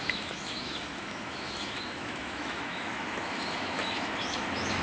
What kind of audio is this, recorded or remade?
remade